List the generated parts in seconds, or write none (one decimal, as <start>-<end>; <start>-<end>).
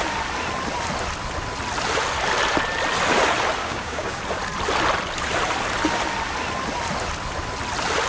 3.6-4.2